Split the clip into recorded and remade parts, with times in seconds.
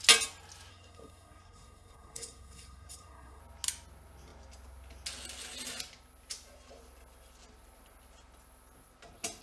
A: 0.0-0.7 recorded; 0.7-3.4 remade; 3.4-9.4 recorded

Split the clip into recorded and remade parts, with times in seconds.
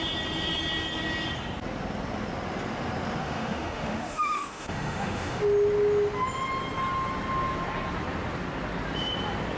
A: 0.0-3.2 recorded; 3.2-5.4 remade; 5.4-9.6 recorded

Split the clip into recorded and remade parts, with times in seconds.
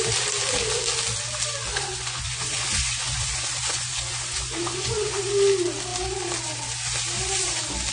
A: 0.0-1.7 recorded; 1.7-5.2 remade; 5.2-7.9 recorded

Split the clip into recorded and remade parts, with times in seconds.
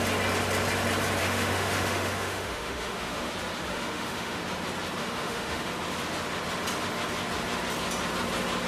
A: 0.0-1.2 recorded; 1.2-3.3 remade; 3.3-3.7 recorded; 3.7-4.4 remade; 4.4-5.0 recorded; 5.0-5.7 remade; 5.7-8.7 recorded